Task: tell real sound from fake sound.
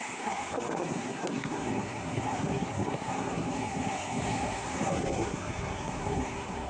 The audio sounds fake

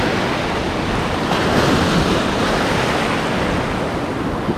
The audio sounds real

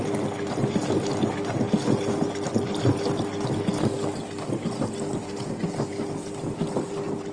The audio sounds real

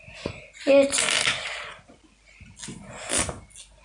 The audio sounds real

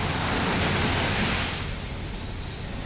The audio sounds real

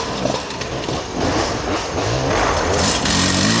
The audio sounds real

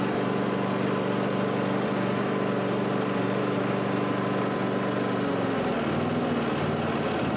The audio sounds real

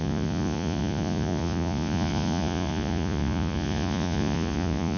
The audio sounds fake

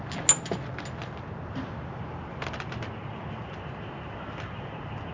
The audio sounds real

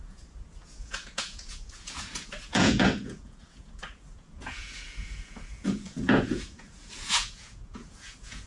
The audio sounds fake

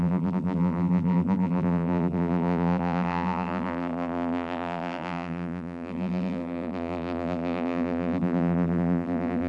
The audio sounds fake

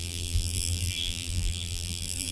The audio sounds fake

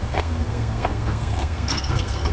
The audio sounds fake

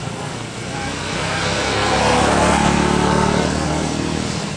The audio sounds fake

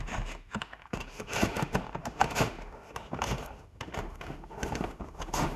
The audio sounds fake